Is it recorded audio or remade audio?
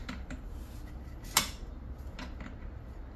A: recorded